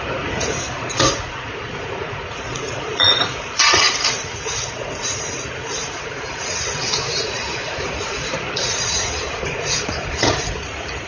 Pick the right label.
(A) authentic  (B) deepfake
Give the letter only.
B